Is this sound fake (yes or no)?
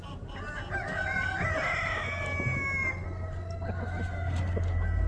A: no